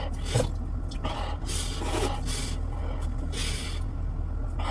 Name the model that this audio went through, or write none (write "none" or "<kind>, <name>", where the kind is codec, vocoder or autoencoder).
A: none